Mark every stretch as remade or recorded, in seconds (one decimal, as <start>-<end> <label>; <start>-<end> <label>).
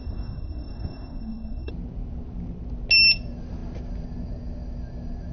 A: 0.0-1.7 remade; 1.7-5.3 recorded